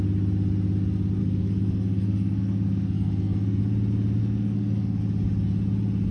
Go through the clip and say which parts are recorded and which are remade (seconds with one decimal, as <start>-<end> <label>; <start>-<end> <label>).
0.0-1.2 recorded; 1.2-3.6 remade; 3.6-4.2 recorded; 4.2-5.0 remade; 5.0-6.1 recorded